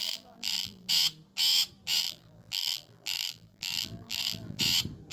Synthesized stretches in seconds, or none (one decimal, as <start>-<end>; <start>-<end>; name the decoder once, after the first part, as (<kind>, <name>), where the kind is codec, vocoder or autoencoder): 0.0-0.9 (vocoder, BigVGAN v2); 2.0-4.6